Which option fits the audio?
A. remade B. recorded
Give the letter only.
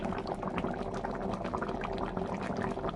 B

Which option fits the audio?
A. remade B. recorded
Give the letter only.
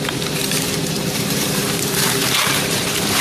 A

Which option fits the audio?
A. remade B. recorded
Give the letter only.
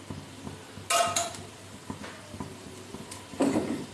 B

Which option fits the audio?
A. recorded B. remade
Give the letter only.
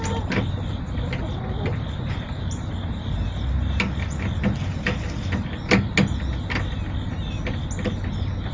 A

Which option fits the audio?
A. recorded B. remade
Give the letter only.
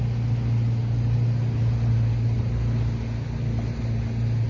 A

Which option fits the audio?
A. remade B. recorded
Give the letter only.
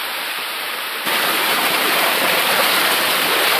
A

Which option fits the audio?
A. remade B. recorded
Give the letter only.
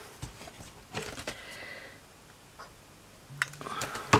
B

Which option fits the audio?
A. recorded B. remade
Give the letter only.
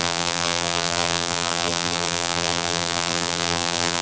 B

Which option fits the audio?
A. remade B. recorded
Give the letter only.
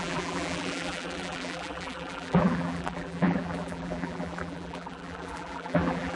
A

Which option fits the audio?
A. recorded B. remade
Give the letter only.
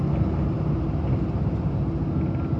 A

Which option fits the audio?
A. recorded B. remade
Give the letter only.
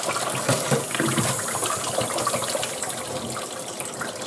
A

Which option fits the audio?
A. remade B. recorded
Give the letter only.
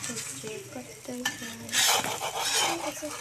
A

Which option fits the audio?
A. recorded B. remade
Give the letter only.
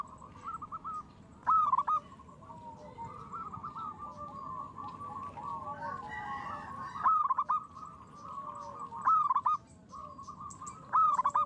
A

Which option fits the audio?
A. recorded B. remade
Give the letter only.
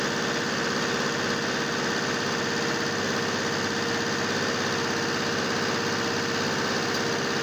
A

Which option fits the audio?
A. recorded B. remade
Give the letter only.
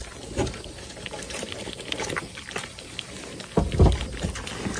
A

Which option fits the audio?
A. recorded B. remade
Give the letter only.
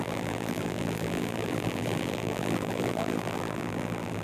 B